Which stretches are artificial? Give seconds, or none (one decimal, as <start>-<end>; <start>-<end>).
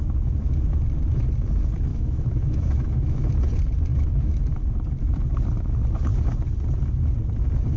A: 1.9-3.3; 3.9-4.6